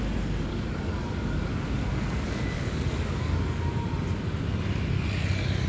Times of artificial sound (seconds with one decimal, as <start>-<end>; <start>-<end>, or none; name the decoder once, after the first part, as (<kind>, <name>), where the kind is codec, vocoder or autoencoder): 0.5-3.9 (codec, DAC)